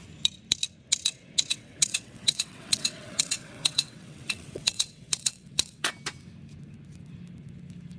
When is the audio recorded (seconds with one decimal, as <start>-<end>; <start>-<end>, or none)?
0.0-1.5; 5.9-8.0